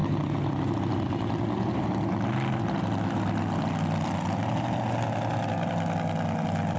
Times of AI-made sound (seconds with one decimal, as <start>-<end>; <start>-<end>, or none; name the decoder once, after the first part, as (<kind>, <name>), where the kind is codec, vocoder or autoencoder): none